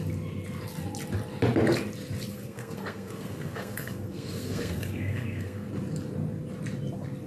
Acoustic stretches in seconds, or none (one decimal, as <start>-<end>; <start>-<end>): 0.0-2.3; 5.7-7.3